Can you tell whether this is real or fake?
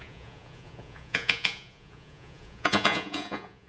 fake